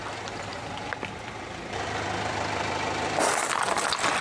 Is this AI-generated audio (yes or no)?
yes